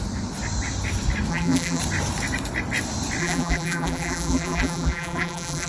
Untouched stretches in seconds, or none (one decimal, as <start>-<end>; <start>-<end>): 0.0-1.3; 1.8-3.2